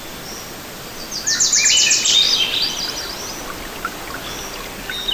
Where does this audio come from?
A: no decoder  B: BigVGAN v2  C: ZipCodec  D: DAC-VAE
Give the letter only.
A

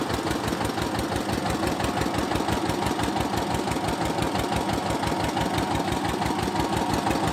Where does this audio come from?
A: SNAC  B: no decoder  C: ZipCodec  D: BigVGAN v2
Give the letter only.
B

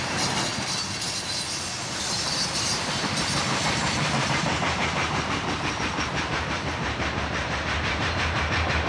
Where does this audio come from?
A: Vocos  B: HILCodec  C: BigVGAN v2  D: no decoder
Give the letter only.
C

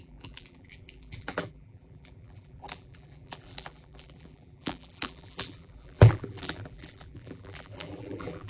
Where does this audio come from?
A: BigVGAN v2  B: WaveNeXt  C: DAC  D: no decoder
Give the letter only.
A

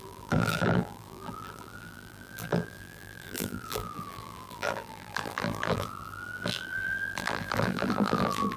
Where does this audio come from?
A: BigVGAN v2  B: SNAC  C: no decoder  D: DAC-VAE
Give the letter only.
A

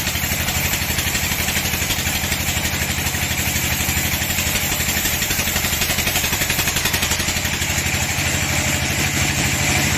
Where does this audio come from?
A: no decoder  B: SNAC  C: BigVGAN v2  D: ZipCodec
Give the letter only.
C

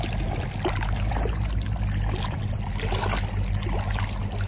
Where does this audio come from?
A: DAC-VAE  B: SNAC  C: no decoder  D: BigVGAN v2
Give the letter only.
C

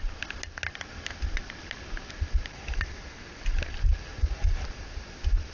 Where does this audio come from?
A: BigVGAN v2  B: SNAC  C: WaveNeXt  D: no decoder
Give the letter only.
D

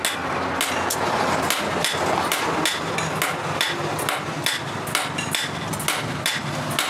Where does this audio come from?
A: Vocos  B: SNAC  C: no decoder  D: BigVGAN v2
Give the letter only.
C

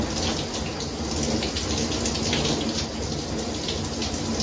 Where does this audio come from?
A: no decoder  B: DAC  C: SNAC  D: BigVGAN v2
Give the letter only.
A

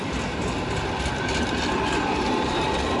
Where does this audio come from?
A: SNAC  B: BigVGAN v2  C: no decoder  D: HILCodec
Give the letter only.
C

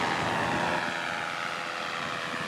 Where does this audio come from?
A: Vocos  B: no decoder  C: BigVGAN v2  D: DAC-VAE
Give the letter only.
B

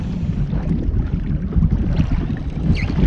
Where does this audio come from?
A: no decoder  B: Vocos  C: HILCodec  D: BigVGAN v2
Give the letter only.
A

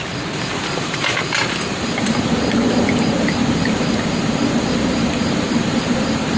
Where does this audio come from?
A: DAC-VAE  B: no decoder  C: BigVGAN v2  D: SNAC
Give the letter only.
C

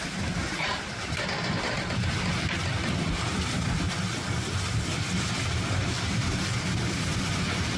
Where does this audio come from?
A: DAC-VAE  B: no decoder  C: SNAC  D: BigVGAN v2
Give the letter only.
D